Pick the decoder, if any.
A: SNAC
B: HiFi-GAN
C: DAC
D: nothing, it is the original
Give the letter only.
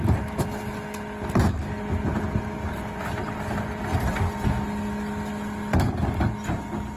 D